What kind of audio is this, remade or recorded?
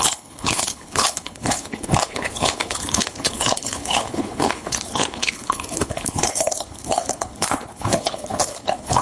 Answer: remade